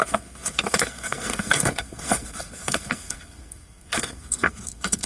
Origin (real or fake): fake